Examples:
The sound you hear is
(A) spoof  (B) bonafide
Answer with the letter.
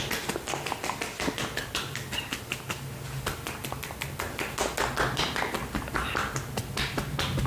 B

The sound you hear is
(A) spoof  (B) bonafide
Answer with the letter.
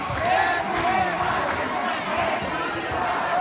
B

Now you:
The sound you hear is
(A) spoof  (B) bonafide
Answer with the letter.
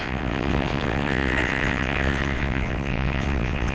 A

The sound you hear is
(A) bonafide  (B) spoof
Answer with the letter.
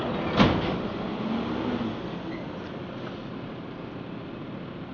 A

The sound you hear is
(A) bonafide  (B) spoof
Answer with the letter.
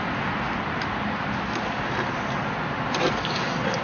A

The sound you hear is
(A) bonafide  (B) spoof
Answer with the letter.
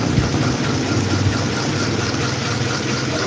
A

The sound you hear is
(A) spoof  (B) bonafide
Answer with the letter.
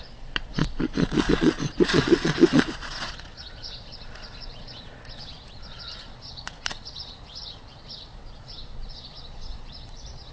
A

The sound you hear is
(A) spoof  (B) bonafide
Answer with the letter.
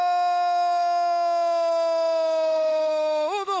A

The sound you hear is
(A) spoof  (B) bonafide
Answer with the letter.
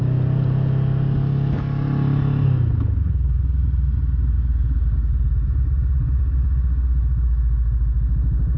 B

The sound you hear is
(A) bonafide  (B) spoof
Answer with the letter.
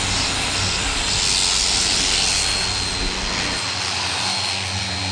A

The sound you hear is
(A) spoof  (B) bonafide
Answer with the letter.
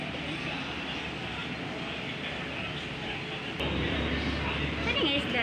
B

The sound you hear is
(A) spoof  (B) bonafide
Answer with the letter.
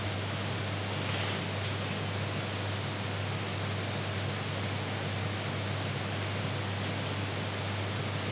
B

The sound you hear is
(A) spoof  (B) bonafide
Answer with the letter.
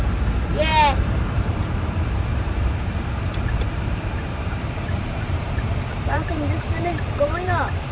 A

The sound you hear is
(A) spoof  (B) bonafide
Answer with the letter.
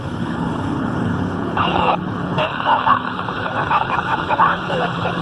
A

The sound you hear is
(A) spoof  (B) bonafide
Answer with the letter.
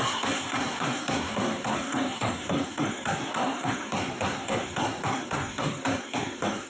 A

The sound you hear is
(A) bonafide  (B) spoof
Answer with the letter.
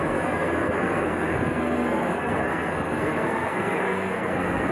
B